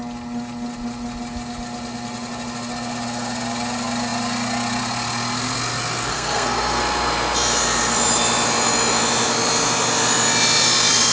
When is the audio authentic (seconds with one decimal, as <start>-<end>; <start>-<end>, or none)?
0.0-6.1; 6.8-11.1